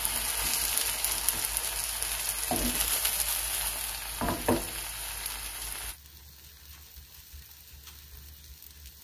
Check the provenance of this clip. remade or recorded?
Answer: recorded